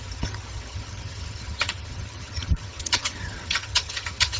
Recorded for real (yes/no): no